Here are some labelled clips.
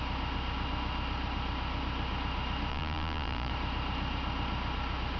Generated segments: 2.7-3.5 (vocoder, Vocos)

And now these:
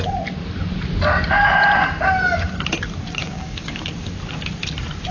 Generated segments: 3.2-3.9 (codec, DAC)